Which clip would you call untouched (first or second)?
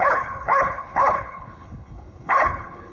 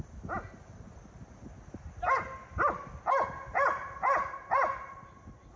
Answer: second